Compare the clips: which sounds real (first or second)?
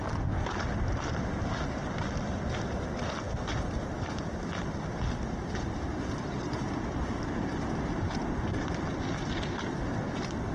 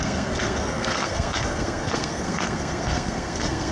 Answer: first